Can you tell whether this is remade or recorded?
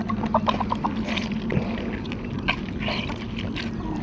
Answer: recorded